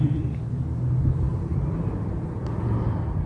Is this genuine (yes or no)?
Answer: yes